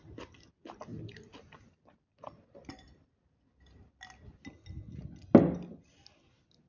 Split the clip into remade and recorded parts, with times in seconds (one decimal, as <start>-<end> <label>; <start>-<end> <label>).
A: 0.0-6.7 recorded